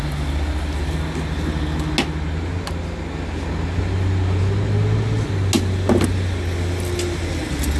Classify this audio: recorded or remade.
recorded